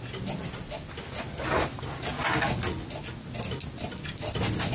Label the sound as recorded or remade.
recorded